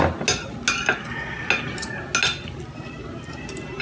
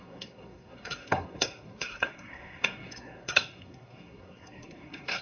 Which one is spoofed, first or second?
second